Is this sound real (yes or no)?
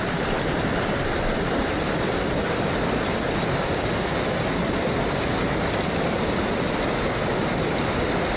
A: yes